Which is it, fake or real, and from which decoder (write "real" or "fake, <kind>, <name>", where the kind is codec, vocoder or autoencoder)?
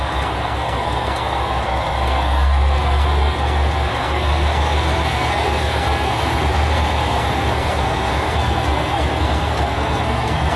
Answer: fake, codec, SNAC